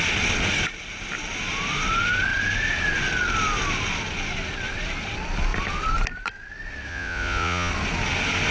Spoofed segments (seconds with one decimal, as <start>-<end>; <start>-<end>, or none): 6.9-7.7